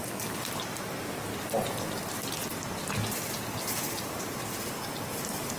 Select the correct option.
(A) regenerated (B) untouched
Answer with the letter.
B